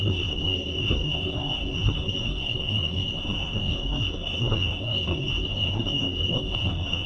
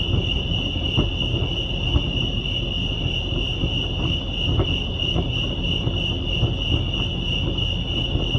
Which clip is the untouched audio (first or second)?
second